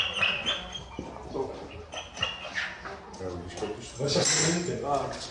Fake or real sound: real